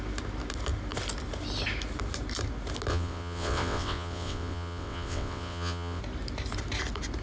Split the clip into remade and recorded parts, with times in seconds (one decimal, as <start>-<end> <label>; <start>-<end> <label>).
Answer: 0.0-2.9 recorded; 2.9-6.0 remade; 6.0-7.2 recorded